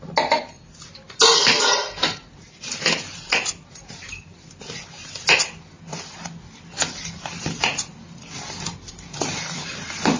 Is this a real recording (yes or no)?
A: yes